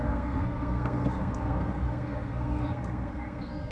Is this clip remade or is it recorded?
remade